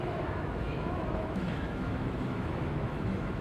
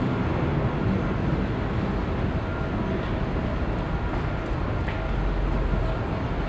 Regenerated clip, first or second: first